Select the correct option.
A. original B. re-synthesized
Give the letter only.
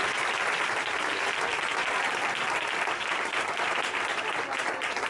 A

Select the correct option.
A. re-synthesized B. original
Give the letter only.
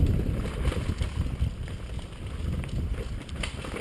B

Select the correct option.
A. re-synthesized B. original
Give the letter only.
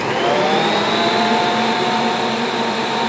A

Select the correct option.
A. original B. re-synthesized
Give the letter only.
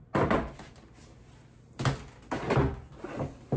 A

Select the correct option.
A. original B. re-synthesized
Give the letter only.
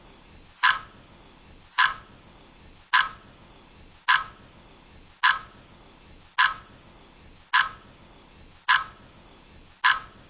A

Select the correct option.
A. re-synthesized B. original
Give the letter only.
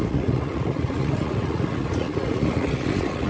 A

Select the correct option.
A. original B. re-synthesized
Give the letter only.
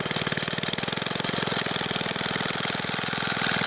A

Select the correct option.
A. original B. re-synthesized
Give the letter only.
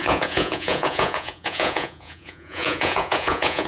B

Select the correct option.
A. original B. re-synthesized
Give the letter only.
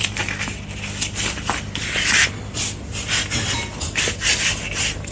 A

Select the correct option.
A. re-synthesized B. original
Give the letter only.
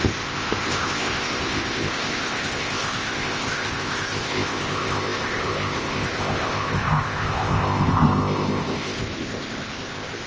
A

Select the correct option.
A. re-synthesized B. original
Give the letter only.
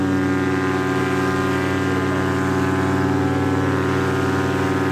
B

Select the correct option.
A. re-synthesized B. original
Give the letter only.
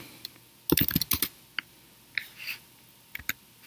B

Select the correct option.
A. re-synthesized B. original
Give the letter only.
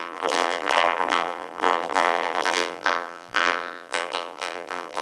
A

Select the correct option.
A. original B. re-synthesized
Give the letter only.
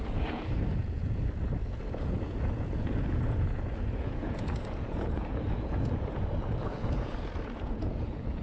B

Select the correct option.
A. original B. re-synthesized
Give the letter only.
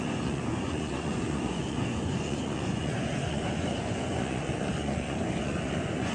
B